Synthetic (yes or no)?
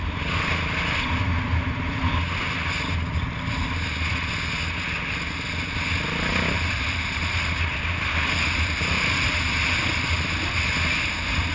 no